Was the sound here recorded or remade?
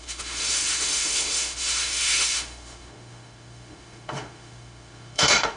remade